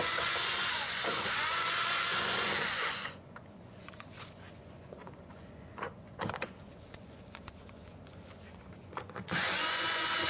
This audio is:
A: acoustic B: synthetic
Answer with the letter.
B